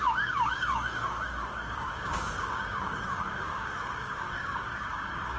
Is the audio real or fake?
fake